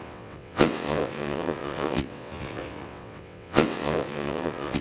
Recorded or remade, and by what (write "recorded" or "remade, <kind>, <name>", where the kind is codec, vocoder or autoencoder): remade, vocoder, WaveNeXt